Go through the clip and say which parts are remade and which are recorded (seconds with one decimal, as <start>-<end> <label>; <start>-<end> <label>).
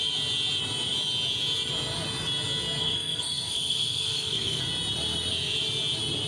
0.0-2.8 recorded; 2.8-4.6 remade; 4.6-6.3 recorded